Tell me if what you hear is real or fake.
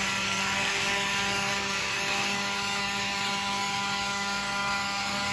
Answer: fake